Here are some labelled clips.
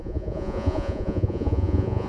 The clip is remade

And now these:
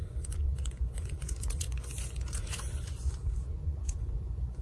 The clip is remade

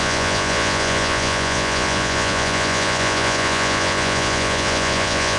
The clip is remade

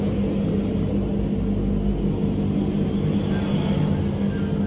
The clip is recorded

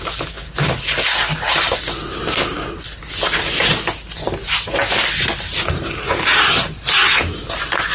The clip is recorded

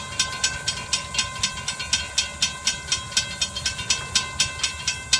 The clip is recorded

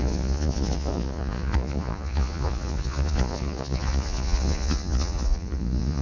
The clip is remade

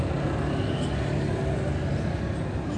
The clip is recorded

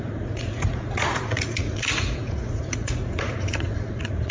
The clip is remade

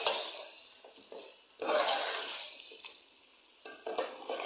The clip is recorded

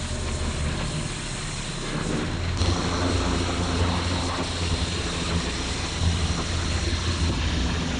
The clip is recorded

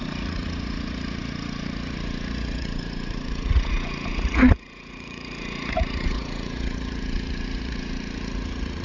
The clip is remade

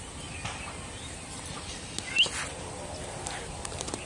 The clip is recorded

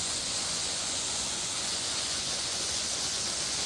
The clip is remade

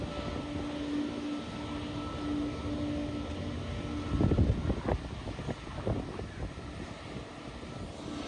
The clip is recorded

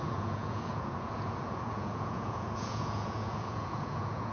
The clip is remade